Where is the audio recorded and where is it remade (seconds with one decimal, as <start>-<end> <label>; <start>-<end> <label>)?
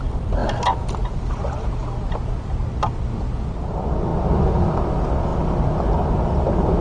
0.0-6.8 recorded